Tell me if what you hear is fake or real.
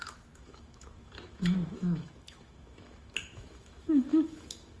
fake